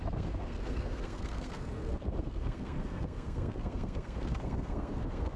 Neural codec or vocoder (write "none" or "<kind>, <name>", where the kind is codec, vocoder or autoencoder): codec, SNAC